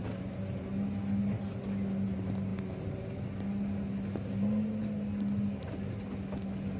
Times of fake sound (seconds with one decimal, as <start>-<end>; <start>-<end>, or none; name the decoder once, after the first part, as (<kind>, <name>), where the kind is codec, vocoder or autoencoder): none